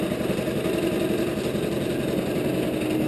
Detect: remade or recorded recorded